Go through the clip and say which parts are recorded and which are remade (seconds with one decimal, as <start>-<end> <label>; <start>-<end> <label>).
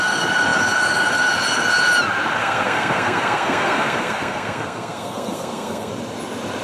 0.0-2.4 recorded; 2.4-5.9 remade; 5.9-6.6 recorded